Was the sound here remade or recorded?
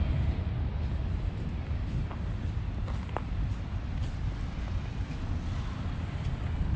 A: recorded